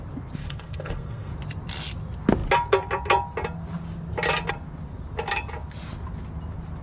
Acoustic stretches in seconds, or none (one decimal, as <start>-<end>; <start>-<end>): 0.0-0.4; 1.3-6.8